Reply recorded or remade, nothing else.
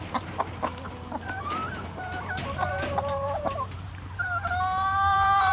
remade